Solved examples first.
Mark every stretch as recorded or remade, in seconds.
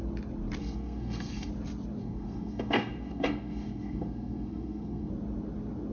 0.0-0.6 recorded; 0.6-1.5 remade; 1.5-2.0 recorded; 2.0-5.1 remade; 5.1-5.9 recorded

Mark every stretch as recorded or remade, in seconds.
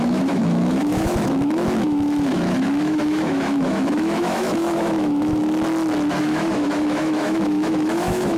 0.0-5.4 remade; 5.4-6.2 recorded; 6.2-8.4 remade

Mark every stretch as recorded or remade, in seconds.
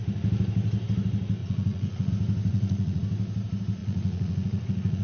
0.0-1.4 recorded; 1.4-2.1 remade; 2.1-2.5 recorded; 2.5-3.0 remade; 3.0-3.8 recorded; 3.8-5.0 remade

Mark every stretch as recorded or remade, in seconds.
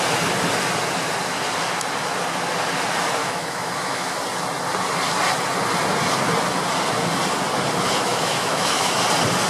0.0-3.2 recorded; 3.2-4.2 remade; 4.2-8.1 recorded; 8.1-8.9 remade; 8.9-9.5 recorded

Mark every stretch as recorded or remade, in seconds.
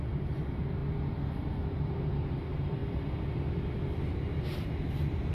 0.0-0.8 remade; 0.8-1.9 recorded; 1.9-2.8 remade; 2.8-4.4 recorded; 4.4-5.3 remade